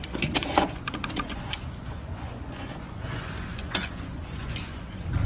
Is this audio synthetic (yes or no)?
yes